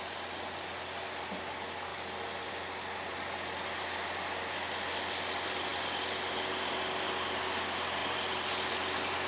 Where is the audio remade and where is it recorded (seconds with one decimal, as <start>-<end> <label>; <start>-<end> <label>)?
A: 0.0-9.3 recorded